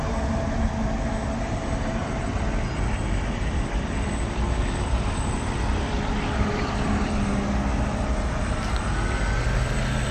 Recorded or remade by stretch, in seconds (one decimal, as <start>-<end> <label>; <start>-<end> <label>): 0.0-2.0 recorded; 2.0-7.2 remade; 7.2-10.1 recorded